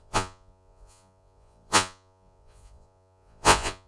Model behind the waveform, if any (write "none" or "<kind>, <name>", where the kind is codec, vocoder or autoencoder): vocoder, Vocos